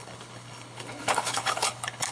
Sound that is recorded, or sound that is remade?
remade